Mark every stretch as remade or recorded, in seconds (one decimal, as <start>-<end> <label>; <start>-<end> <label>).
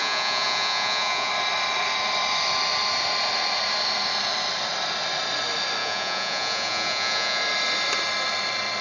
0.0-1.3 remade; 1.3-5.8 recorded; 5.8-7.4 remade; 7.4-8.8 recorded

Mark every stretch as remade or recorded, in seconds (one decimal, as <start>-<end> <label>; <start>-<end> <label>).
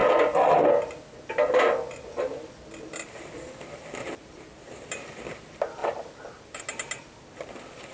0.0-7.9 recorded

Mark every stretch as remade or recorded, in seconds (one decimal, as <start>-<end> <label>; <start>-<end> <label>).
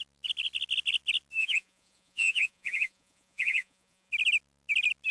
0.0-1.4 recorded; 1.4-4.1 remade; 4.1-5.1 recorded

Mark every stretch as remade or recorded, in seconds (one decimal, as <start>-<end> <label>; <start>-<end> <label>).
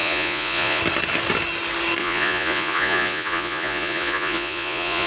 0.0-0.8 remade; 0.8-2.0 recorded; 2.0-5.1 remade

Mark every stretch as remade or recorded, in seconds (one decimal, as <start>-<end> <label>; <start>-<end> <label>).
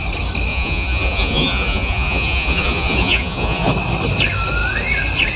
0.0-0.5 recorded; 0.5-3.7 remade; 3.7-5.4 recorded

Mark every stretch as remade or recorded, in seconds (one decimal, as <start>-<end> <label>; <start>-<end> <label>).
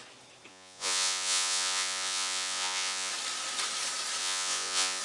0.0-0.5 recorded; 0.5-3.1 remade; 3.1-4.2 recorded; 4.2-5.0 remade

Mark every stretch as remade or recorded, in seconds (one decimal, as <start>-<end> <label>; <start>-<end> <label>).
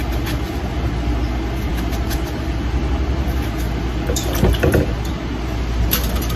0.0-6.4 recorded